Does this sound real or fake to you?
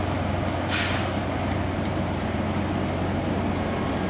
real